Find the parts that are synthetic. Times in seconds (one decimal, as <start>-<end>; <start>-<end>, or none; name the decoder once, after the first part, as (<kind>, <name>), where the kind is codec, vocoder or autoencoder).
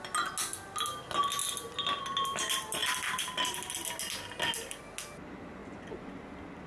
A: 5.6-6.2 (vocoder, Vocos)